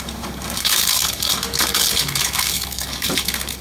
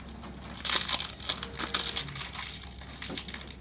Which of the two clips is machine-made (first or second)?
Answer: first